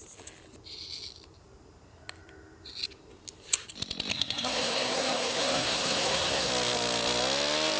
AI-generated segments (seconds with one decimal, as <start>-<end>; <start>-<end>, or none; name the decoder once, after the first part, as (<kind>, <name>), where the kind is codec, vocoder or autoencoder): 4.1-6.5 (codec, SNAC)